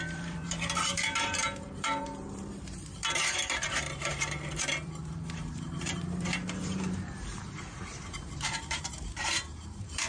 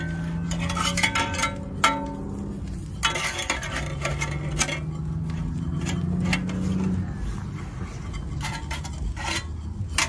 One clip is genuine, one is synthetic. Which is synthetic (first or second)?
first